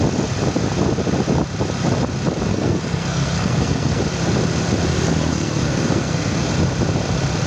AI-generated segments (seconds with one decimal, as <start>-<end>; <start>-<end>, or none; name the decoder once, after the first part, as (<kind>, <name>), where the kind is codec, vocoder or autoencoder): 2.5-4.0 (codec, SNAC); 5.3-6.5